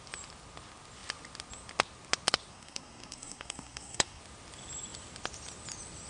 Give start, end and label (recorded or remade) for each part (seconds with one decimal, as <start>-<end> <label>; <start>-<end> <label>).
0.0-2.5 recorded; 2.5-4.2 remade; 4.2-6.1 recorded